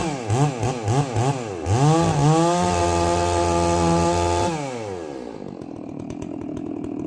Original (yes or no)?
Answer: yes